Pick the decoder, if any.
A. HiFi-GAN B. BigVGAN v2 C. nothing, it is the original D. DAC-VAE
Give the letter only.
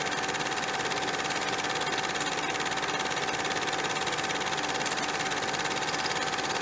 C